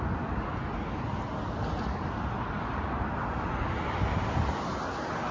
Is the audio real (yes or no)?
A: yes